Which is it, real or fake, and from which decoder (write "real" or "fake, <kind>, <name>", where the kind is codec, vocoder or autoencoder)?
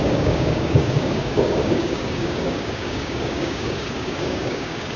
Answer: fake, codec, DAC